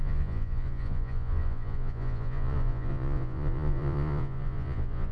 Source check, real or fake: fake